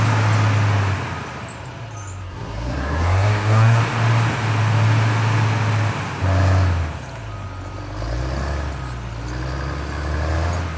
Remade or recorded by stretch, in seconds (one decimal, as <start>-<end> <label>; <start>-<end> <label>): 0.0-2.2 recorded; 2.2-3.8 remade; 3.8-10.8 recorded